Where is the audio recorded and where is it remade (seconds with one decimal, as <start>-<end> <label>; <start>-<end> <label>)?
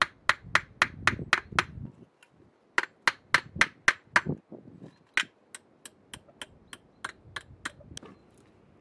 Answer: 0.0-8.8 recorded